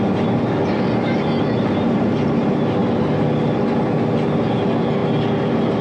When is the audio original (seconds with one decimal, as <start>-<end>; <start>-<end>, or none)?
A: 0.0-5.8